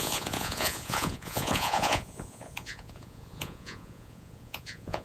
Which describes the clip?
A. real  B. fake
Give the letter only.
B